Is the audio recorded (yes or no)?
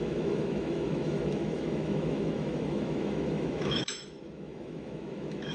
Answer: no